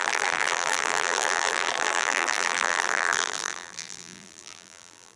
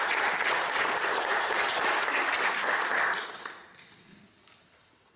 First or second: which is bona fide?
second